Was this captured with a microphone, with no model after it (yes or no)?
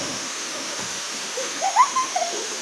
no